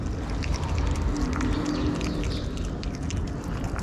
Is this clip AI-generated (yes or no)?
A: no